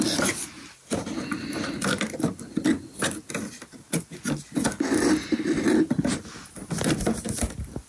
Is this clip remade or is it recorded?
recorded